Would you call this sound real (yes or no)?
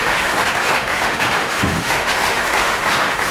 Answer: no